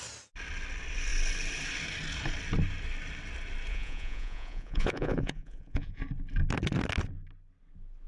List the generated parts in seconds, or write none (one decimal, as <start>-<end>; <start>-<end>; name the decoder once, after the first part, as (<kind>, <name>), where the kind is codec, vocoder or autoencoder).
3.7-6.0 (vocoder, Vocos)